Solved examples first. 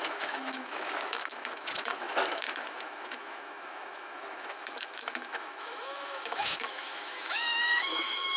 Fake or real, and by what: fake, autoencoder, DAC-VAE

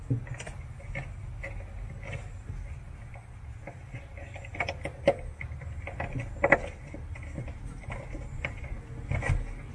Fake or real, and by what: real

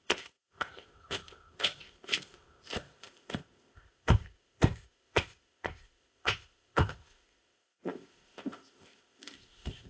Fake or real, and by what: fake, codec, ZipCodec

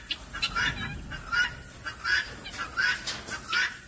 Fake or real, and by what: real